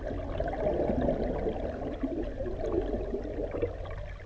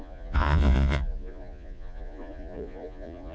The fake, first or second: second